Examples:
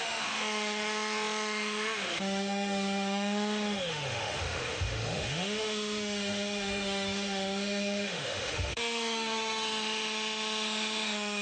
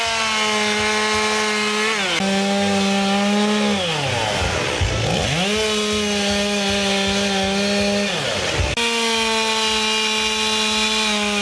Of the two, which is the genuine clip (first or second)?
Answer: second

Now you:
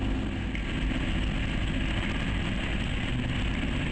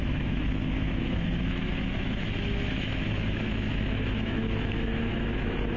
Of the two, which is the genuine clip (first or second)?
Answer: first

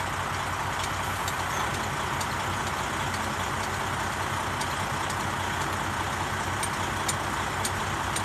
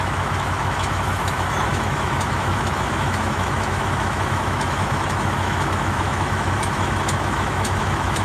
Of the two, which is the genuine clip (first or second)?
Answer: first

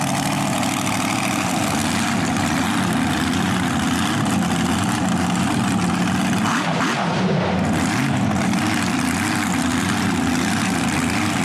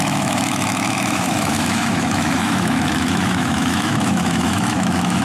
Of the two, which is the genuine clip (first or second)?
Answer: first